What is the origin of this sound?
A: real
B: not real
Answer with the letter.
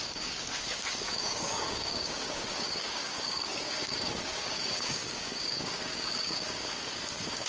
B